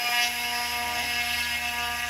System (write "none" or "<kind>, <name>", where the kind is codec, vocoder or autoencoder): none